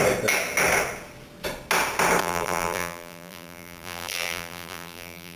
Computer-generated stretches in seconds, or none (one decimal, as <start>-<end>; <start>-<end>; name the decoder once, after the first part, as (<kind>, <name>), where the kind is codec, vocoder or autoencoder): 2.2-5.4 (vocoder, BigVGAN v2)